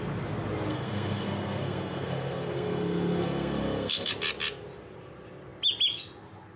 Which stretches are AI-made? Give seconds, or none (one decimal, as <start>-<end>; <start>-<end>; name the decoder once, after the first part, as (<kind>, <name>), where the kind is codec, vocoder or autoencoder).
0.7-4.1 (codec, SNAC)